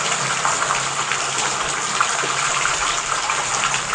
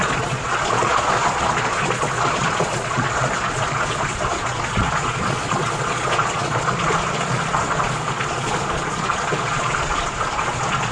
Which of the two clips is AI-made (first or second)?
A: second